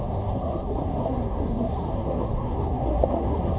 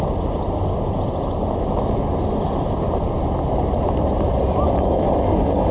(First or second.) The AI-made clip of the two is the first